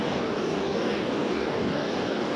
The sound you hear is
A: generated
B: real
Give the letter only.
A